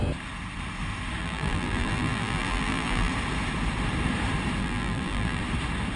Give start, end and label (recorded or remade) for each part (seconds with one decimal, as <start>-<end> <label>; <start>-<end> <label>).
0.0-1.2 recorded; 1.2-3.1 remade; 3.1-4.6 recorded; 4.6-5.4 remade; 5.4-6.0 recorded